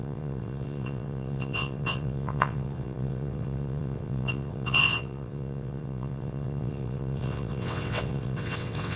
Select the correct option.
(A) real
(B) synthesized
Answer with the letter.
B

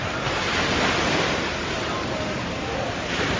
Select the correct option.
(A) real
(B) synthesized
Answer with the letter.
A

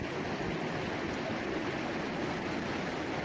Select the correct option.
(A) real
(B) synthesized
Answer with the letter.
A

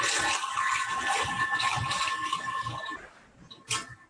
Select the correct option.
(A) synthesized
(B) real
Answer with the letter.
B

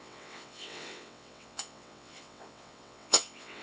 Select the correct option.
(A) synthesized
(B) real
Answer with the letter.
A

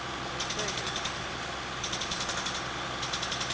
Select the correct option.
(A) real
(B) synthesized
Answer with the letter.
A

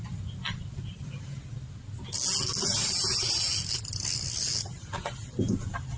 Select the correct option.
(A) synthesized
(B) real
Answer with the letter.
B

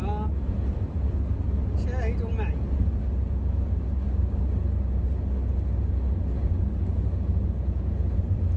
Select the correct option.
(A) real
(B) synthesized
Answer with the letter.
A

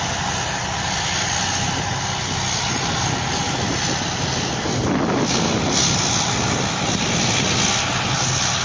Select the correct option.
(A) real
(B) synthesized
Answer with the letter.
A